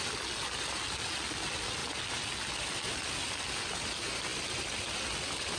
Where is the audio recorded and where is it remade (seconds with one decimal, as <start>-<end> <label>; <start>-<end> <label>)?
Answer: 0.0-5.6 recorded